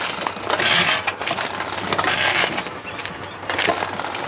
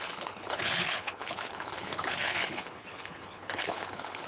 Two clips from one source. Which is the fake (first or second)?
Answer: second